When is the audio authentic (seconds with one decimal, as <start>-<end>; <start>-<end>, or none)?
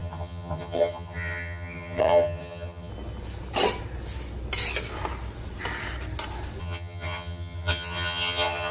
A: 2.9-6.6